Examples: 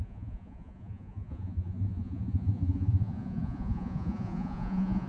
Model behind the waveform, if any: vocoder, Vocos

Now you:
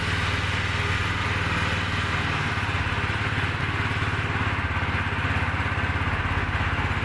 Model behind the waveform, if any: none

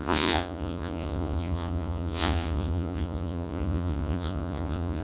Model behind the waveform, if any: vocoder, Vocos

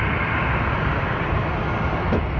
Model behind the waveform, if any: none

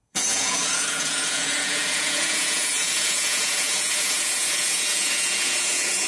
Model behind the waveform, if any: vocoder, Vocos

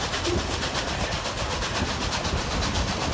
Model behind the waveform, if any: none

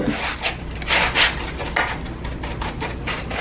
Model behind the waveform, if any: none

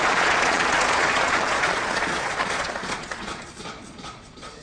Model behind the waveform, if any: vocoder, Vocos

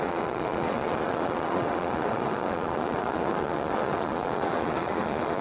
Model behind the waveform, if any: vocoder, Vocos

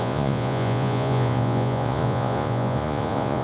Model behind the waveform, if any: vocoder, Vocos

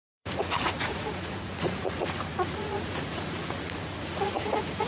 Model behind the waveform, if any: vocoder, Vocos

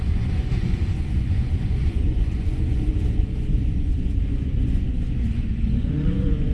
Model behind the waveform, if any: vocoder, Vocos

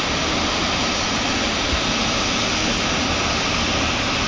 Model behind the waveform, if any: none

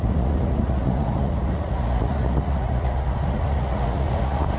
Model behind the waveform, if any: vocoder, Vocos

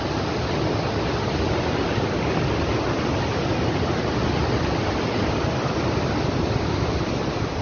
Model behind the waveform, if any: none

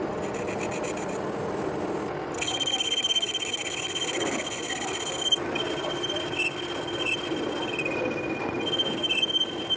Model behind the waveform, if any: none